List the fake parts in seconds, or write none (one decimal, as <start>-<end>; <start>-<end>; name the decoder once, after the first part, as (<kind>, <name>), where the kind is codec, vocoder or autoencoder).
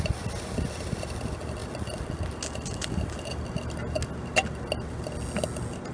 none